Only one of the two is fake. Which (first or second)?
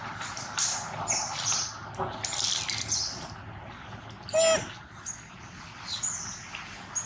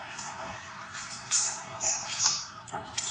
second